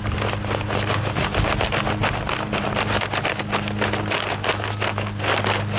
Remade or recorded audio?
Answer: recorded